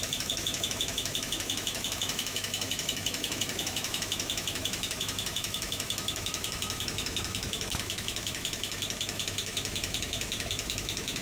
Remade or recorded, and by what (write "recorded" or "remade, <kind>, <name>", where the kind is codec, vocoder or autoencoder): remade, autoencoder, DAC-VAE